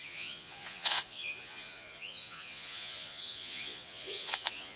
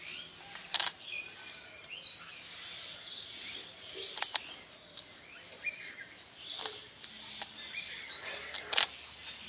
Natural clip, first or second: second